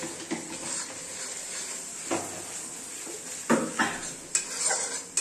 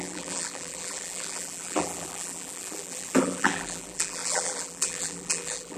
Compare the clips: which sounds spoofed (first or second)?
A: second